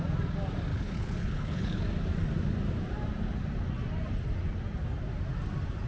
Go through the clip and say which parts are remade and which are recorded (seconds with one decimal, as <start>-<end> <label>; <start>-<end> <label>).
0.0-0.7 recorded; 0.7-1.8 remade; 1.8-5.9 recorded